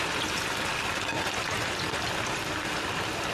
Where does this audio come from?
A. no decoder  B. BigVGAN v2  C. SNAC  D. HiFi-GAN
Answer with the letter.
A